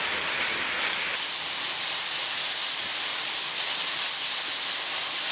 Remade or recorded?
recorded